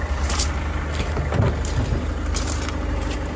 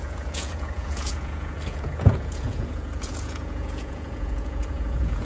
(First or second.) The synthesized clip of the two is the second